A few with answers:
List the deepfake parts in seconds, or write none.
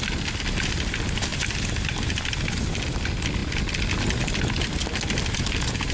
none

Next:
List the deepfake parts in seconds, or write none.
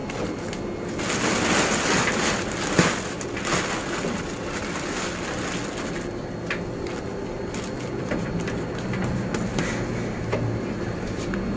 none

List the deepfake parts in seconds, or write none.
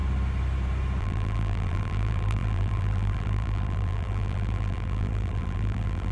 1.0-6.1 (vocoder, BigVGAN v2)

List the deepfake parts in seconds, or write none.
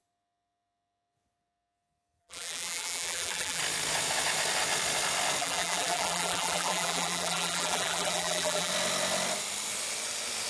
2.2-3.6 (vocoder, BigVGAN v2); 5.4-8.7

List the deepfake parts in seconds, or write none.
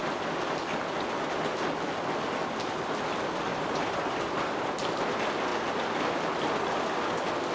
3.5-4.3 (vocoder, BigVGAN v2)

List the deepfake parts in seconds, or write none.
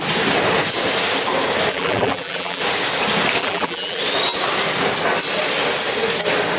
1.7-2.6 (vocoder, BigVGAN v2); 3.4-4.0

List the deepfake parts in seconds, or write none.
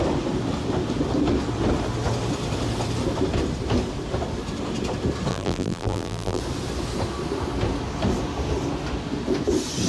5.3-6.4 (vocoder, BigVGAN v2)